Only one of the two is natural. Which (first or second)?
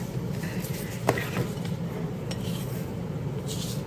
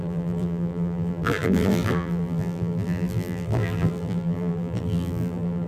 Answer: first